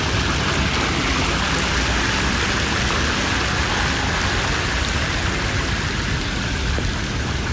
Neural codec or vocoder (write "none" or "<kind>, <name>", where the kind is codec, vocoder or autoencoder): none